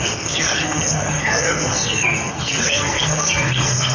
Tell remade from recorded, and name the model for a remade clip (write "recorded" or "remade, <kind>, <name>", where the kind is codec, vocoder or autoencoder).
remade, codec, SNAC